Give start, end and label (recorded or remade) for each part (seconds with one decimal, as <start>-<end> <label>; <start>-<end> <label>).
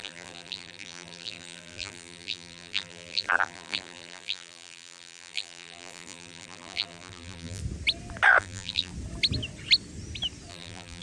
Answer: 0.0-7.6 remade; 7.6-8.4 recorded; 8.4-8.9 remade; 8.9-10.5 recorded; 10.5-11.0 remade